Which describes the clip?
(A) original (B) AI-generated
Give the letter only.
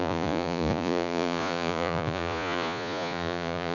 B